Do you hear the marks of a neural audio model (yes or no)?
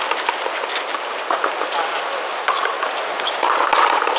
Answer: no